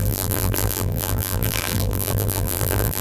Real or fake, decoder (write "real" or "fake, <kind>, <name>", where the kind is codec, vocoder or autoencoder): fake, vocoder, BigVGAN v2